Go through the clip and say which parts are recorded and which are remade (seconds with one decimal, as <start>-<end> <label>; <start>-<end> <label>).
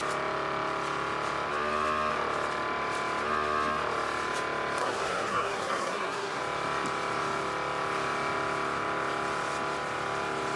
0.0-4.8 recorded; 4.8-6.4 remade; 6.4-10.6 recorded